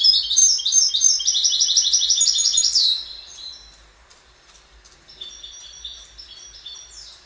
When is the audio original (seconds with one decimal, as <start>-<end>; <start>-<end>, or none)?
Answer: 1.4-2.7